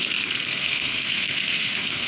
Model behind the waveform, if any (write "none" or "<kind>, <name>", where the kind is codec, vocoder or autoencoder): codec, SNAC